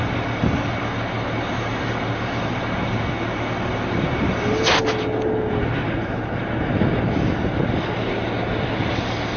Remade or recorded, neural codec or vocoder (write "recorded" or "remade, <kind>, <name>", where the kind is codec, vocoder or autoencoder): recorded